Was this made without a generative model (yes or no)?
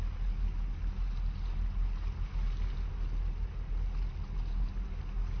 yes